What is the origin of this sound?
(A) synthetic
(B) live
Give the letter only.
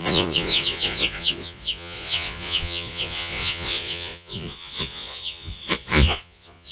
A